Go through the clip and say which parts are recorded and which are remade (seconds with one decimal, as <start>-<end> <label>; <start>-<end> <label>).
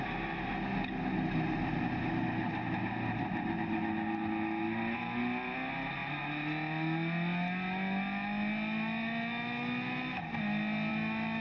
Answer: 0.0-11.4 recorded